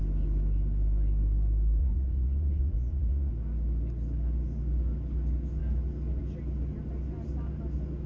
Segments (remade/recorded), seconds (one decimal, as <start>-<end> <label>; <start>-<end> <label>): 0.0-1.8 recorded; 1.8-3.3 remade; 3.3-8.1 recorded